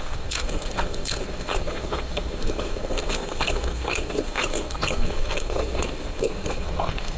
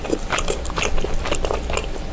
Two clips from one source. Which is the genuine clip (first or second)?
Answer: second